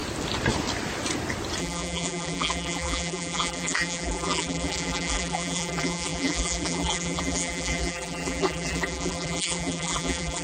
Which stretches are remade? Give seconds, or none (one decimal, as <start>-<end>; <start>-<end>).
1.6-10.4